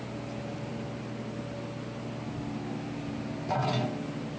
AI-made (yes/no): no